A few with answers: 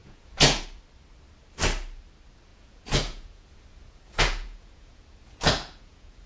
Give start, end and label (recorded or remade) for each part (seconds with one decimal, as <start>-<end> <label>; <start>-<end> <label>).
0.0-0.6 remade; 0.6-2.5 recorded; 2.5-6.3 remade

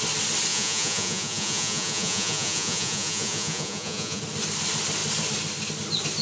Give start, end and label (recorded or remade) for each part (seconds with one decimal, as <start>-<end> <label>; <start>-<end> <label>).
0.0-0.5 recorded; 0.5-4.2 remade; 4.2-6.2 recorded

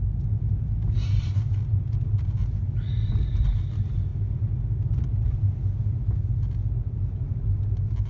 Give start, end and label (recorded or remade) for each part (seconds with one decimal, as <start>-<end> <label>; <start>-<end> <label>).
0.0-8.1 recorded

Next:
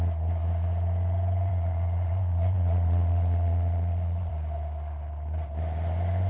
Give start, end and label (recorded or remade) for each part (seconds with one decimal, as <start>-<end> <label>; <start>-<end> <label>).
0.0-1.5 recorded; 1.5-4.3 remade; 4.3-6.3 recorded

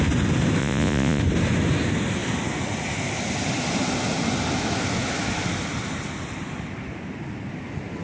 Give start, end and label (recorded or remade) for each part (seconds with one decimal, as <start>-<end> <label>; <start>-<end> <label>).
0.0-0.6 recorded; 0.6-1.2 remade; 1.2-8.0 recorded

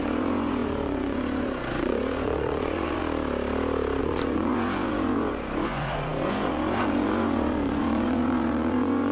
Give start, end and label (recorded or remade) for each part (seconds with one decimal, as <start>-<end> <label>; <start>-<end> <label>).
0.0-3.0 remade; 3.0-4.0 recorded; 4.0-9.1 remade

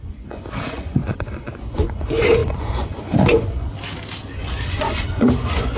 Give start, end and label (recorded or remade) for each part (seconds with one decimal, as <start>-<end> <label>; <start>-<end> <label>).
0.0-3.7 remade; 3.7-4.2 recorded; 4.2-5.8 remade

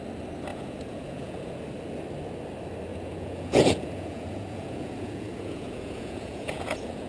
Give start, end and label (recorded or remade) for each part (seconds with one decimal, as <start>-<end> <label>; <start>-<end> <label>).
0.0-0.5 recorded; 0.5-1.6 remade; 1.6-2.9 recorded; 2.9-7.1 remade